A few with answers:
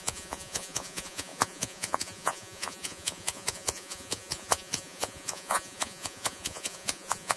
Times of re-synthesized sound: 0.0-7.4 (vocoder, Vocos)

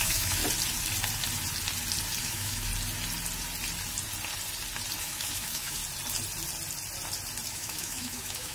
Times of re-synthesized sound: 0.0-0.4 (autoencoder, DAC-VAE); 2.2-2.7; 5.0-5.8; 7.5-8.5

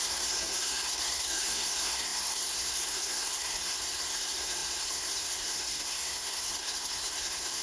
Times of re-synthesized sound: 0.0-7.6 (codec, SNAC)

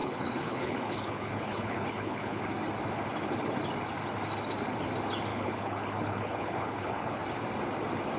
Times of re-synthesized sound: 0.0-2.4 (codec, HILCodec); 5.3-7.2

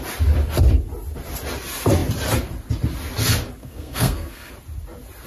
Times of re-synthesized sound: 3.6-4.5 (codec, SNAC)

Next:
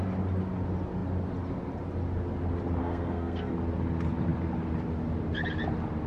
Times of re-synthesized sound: 2.8-3.5 (codec, SNAC)